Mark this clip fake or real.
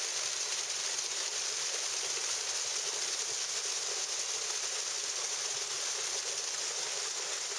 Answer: real